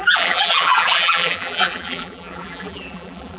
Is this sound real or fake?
fake